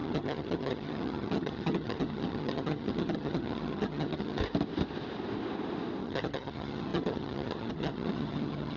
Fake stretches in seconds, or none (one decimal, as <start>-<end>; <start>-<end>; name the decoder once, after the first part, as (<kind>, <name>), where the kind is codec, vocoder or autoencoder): 0.0-4.4 (vocoder, HiFi-GAN); 6.0-8.8